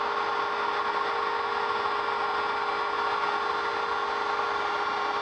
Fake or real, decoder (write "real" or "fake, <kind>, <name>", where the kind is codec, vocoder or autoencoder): real